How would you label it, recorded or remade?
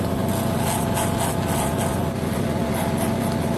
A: recorded